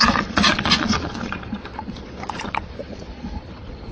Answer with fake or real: fake